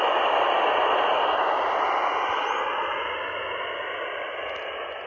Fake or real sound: real